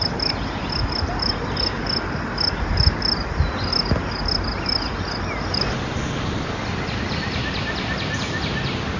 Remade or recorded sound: recorded